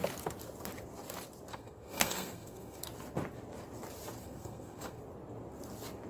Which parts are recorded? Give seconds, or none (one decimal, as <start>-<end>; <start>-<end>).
0.0-1.5; 2.8-4.2; 5.0-6.1